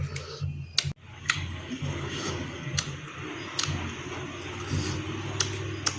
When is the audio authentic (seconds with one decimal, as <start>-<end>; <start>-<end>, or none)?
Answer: 0.0-1.1; 2.8-6.0